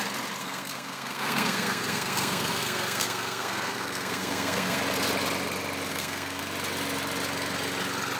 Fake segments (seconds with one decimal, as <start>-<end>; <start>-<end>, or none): 0.4-4.8; 5.9-6.4